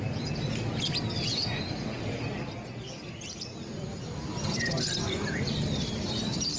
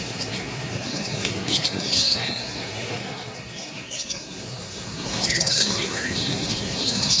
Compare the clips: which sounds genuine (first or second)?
first